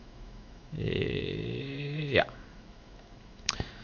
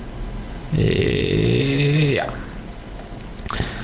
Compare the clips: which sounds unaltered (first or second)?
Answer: second